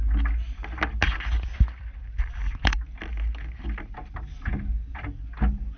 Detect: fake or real real